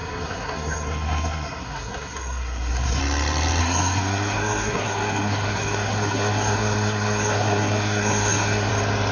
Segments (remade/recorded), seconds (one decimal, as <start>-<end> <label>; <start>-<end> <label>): 0.0-3.0 remade; 3.0-3.6 recorded; 3.6-8.7 remade; 8.7-9.1 recorded